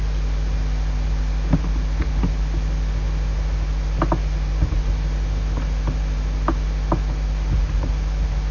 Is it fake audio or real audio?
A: real